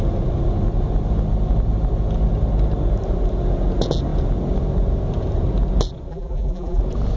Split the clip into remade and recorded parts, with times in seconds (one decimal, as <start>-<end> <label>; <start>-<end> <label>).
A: 0.0-6.1 recorded; 6.1-6.8 remade; 6.8-7.2 recorded